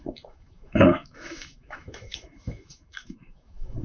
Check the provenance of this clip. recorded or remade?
remade